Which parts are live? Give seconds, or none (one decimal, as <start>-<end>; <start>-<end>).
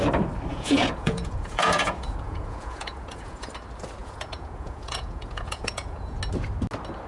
0.0-0.5; 3.5-4.0; 6.2-7.1